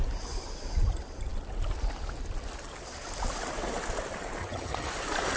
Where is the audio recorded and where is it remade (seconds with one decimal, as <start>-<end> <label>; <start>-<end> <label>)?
0.0-4.4 recorded; 4.4-4.9 remade; 4.9-5.4 recorded